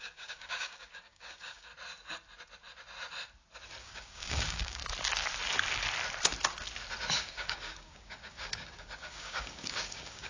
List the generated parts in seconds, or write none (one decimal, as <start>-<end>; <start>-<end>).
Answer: 0.0-1.7; 3.8-4.8; 7.2-10.3